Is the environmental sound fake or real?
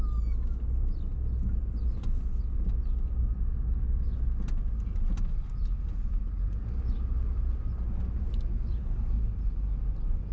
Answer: real